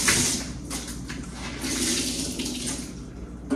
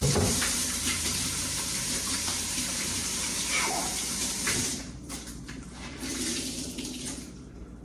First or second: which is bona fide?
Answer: first